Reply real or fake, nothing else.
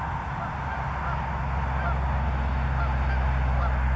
real